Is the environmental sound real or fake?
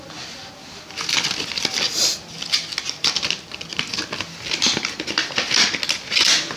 real